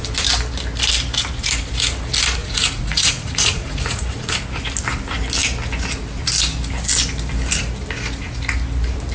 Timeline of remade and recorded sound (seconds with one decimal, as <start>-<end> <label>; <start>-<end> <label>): 0.0-2.4 recorded; 2.4-4.3 remade; 4.3-9.1 recorded